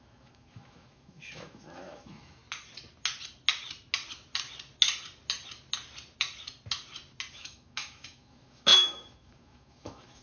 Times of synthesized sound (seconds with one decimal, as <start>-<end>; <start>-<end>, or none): 0.0-2.4; 7.3-10.2